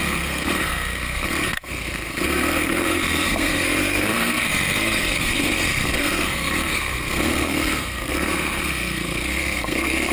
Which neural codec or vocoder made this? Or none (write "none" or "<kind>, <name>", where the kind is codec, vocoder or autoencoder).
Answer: codec, SNAC